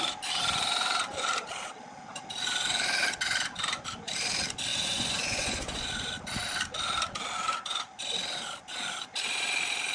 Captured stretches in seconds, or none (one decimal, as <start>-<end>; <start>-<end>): 0.0-4.7; 5.9-9.9